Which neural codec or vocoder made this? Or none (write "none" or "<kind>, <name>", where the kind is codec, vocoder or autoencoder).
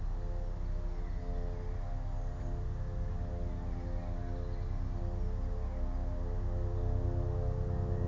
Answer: none